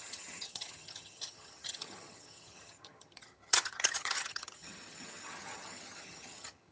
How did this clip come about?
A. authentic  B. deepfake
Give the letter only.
B